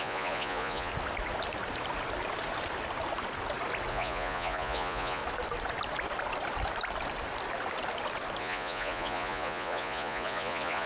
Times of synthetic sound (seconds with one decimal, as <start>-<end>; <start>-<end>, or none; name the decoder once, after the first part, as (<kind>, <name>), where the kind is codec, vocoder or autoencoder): 0.0-0.9 (vocoder, Vocos); 3.9-5.2; 8.4-10.9